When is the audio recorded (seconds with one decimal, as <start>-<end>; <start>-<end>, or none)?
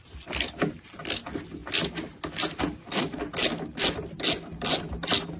0.0-5.4